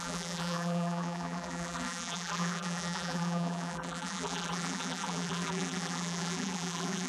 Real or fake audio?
fake